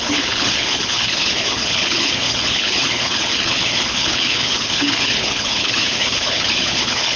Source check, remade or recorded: remade